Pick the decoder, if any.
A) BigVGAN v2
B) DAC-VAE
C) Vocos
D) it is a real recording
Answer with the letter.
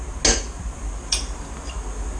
D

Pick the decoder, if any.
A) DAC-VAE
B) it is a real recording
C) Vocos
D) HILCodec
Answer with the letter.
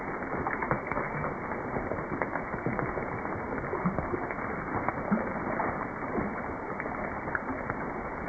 B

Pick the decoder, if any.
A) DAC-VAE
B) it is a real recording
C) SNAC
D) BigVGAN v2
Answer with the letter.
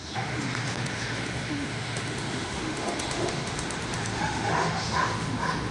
A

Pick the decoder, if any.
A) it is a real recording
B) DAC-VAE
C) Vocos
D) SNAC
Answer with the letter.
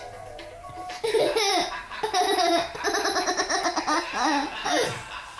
A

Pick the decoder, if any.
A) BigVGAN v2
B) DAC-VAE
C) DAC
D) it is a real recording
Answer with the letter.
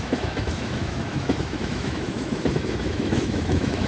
B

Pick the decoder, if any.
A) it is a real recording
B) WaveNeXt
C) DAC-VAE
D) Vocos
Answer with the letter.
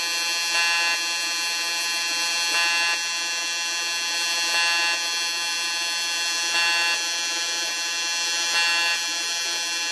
A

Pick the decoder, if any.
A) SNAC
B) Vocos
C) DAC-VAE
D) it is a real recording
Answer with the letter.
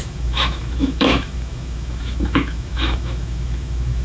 C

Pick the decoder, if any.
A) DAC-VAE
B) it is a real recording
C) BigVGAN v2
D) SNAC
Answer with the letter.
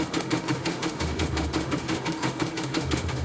A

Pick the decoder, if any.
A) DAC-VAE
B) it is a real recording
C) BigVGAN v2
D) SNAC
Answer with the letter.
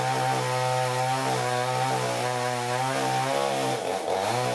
B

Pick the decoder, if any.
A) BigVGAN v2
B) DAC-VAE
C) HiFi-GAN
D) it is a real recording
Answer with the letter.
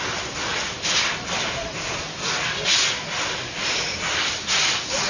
D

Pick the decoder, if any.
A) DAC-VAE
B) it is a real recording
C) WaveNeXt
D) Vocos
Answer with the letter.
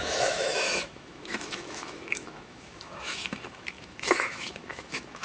A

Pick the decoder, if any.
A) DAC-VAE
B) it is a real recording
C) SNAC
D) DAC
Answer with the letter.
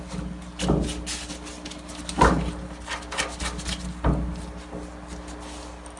B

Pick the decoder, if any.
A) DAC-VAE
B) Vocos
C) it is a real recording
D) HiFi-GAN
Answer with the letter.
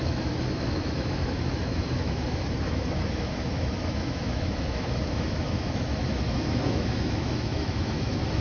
A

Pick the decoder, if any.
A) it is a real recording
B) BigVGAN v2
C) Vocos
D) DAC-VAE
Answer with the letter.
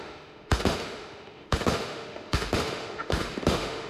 D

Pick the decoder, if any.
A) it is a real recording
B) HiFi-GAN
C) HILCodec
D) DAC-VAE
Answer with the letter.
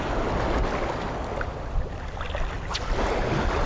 A